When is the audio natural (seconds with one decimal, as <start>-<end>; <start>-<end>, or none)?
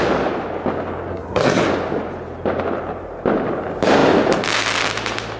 0.0-1.1; 1.6-5.4